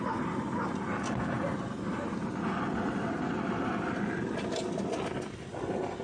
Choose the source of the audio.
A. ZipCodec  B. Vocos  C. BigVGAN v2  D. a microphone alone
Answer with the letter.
D